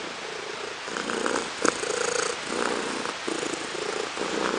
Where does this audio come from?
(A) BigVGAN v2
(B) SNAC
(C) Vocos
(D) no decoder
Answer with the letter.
D